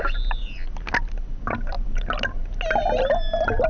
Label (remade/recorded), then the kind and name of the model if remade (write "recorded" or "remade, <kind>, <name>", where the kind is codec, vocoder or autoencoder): recorded